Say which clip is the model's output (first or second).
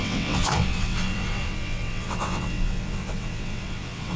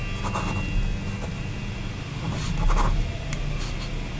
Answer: first